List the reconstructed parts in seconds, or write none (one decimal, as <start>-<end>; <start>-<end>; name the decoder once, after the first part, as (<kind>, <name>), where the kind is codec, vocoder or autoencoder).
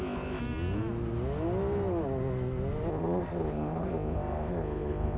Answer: 0.0-0.4 (codec, ZipCodec); 2.9-5.2